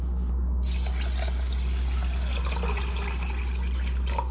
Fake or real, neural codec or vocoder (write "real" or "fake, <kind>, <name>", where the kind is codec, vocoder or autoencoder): real